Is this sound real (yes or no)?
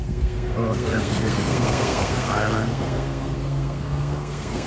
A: no